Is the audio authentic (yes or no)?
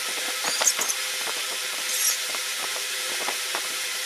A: no